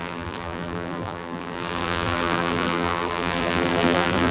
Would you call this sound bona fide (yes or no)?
no